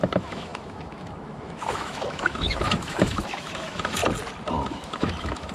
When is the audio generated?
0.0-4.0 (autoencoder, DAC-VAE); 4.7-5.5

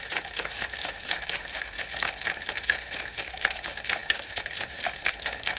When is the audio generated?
0.0-5.6 (autoencoder, DAC-VAE)

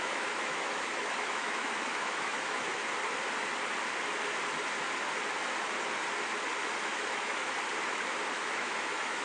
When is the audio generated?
0.0-2.7 (autoencoder, DAC-VAE); 6.8-7.4; 8.3-9.2

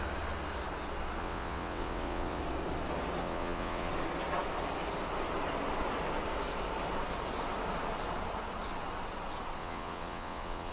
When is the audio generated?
1.2-2.4 (vocoder, WaveNeXt); 3.2-3.9; 9.6-10.7

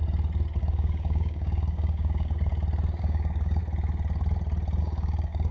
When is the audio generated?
0.6-2.5 (codec, DAC); 3.0-3.6; 4.8-5.5

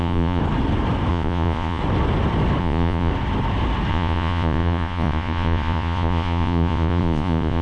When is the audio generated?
0.0-0.4 (vocoder, Vocos); 1.1-1.8; 2.6-3.1; 3.9-7.6

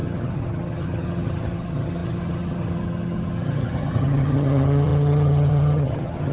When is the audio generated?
0.0-6.3 (vocoder, HiFi-GAN)

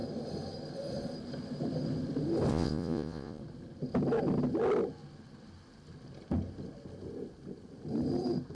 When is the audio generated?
2.5-3.4 (vocoder, Vocos)